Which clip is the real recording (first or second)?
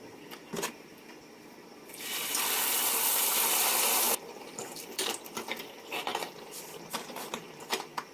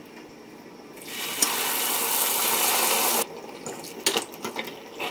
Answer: second